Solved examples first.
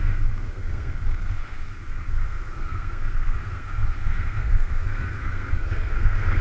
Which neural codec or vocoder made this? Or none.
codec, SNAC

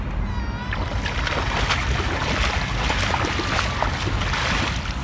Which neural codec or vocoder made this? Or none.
none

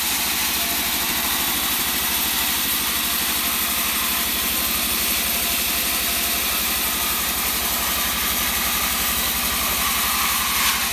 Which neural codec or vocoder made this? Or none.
none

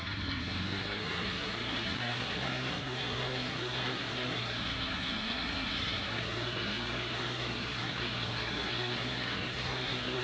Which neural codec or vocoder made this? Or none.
codec, SNAC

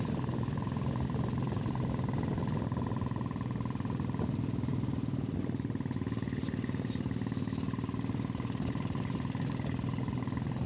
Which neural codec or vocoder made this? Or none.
none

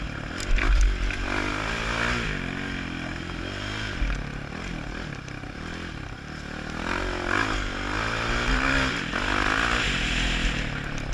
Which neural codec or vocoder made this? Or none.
none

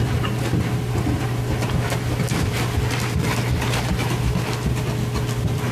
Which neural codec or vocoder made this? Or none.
none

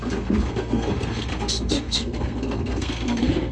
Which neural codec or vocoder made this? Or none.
codec, SNAC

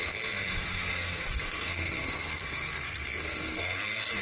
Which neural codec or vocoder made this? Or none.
codec, SNAC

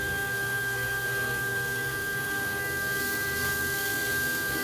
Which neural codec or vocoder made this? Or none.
codec, SNAC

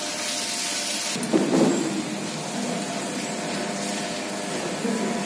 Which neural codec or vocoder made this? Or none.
none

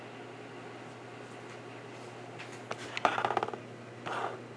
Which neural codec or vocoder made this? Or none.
none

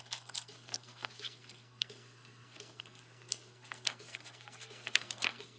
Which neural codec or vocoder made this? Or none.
codec, SNAC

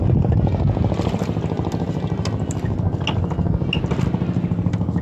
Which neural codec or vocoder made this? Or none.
none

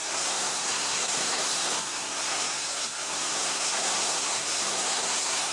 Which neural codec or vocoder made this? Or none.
codec, SNAC